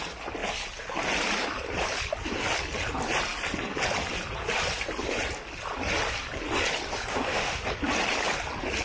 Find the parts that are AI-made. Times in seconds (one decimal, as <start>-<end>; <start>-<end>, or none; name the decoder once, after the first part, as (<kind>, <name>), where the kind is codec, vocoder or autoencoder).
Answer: 7.1-7.6 (autoencoder, DAC-VAE)